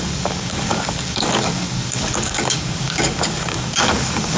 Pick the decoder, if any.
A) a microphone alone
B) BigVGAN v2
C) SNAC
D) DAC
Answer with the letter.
D